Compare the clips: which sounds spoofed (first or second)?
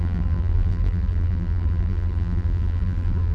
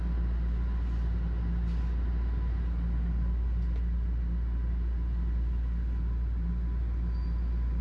first